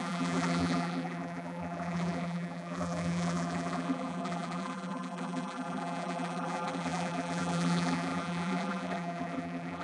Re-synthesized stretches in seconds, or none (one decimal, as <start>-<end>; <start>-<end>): 0.0-9.8